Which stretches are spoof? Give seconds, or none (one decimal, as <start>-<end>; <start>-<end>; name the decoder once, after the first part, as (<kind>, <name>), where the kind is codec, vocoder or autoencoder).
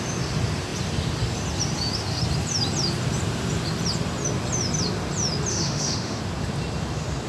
5.5-6.2 (autoencoder, DAC-VAE)